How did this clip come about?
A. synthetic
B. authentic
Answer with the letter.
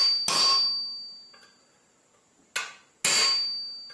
B